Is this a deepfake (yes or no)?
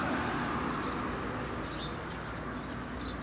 no